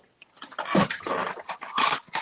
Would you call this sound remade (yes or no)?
no